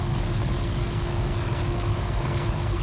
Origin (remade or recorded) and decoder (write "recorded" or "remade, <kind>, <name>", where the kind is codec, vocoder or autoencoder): remade, codec, SNAC